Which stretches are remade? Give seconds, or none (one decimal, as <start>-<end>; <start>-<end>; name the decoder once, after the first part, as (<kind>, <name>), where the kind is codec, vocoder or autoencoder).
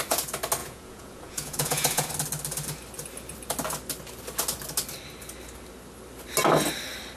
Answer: 0.6-2.1 (vocoder, Vocos)